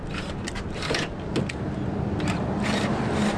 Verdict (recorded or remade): recorded